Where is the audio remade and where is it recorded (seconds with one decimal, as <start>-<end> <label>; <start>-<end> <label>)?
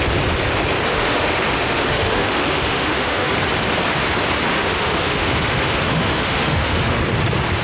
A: 0.0-0.9 recorded; 0.9-3.3 remade; 3.3-4.5 recorded; 4.5-7.0 remade; 7.0-7.6 recorded